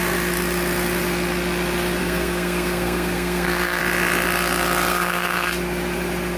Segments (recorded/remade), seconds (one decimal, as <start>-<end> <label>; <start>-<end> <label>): 0.0-2.0 recorded; 2.0-3.8 remade; 3.8-4.9 recorded; 4.9-5.5 remade; 5.5-6.4 recorded